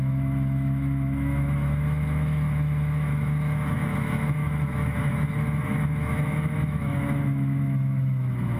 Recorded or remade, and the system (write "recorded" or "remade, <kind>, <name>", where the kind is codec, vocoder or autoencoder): remade, autoencoder, DAC-VAE